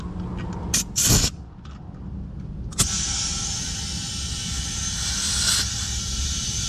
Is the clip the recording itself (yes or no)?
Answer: yes